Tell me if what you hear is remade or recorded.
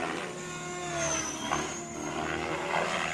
recorded